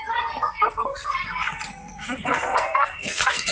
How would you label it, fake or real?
fake